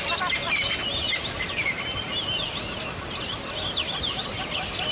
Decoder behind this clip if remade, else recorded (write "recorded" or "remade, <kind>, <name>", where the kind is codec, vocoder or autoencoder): recorded